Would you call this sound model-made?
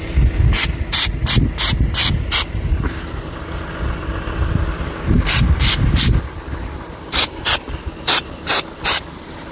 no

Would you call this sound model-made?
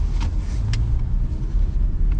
no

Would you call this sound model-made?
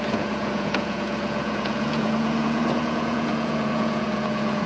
yes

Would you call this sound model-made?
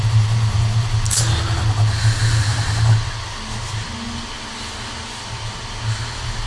no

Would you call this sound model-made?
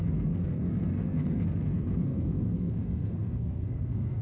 yes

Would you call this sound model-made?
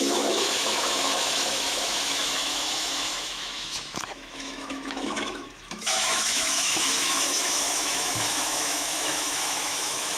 yes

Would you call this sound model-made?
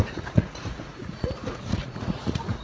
yes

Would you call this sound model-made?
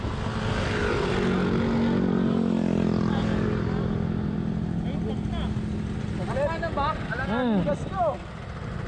no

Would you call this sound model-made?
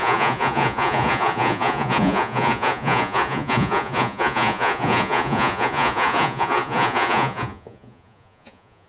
yes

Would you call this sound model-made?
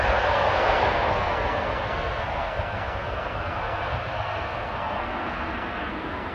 yes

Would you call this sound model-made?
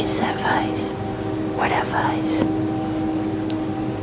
no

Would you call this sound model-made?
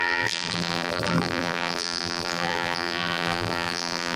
yes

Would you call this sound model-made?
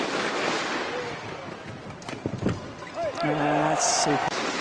no